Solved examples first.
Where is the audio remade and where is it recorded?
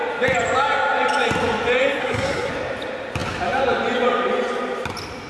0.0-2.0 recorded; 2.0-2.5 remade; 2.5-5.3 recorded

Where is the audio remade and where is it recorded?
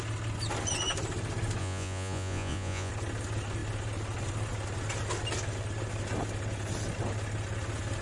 0.0-1.6 recorded; 1.6-2.9 remade; 2.9-8.0 recorded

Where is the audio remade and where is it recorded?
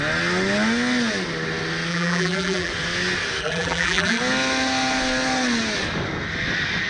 0.0-1.9 recorded; 1.9-2.7 remade; 2.7-3.4 recorded; 3.4-4.2 remade; 4.2-6.9 recorded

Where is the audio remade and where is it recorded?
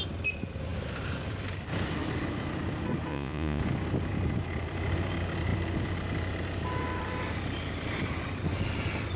0.0-3.1 recorded; 3.1-3.6 remade; 3.6-9.2 recorded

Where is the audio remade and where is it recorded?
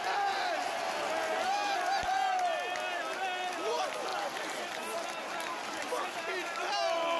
0.0-7.2 recorded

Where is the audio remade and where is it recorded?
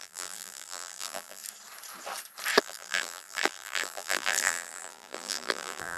0.0-1.4 remade; 1.4-2.6 recorded; 2.6-6.0 remade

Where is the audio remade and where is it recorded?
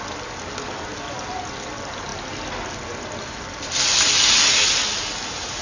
0.0-5.6 recorded